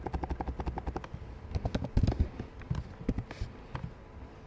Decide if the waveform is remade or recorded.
recorded